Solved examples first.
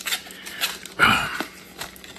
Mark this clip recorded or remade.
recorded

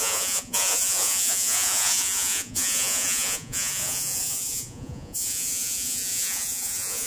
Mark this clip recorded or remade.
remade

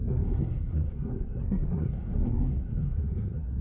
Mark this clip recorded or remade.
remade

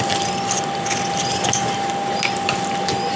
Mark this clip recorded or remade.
recorded